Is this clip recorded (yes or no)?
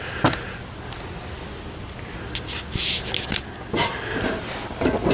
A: yes